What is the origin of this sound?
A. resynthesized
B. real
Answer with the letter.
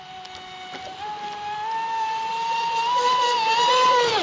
B